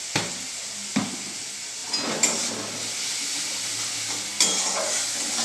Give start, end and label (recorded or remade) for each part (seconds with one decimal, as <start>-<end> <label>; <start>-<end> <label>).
0.0-5.4 recorded